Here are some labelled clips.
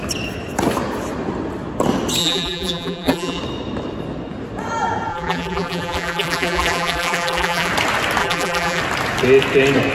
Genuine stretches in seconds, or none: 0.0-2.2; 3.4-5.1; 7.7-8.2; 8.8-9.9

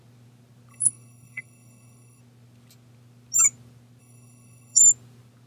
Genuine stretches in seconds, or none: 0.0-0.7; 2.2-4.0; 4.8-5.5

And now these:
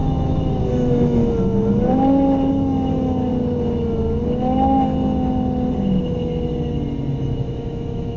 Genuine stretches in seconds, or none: 1.2-2.5; 3.3-7.1

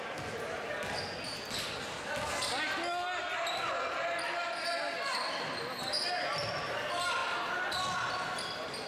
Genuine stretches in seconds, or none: 0.0-8.9